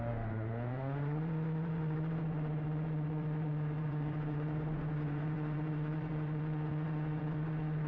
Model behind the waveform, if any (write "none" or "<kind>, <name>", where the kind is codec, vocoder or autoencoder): vocoder, Vocos